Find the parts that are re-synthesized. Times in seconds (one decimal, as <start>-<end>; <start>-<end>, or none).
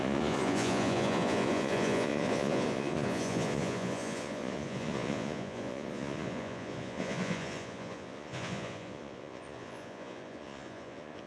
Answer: 0.0-11.3